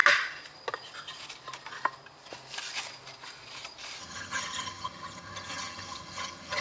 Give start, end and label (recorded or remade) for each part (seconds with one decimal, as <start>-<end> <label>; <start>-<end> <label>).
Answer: 0.0-4.0 recorded; 4.0-6.6 remade